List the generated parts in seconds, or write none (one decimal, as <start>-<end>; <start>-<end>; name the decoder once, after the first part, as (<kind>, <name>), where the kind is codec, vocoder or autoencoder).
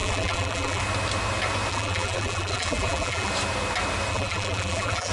0.0-0.8 (vocoder, BigVGAN v2); 1.7-3.3; 4.1-5.1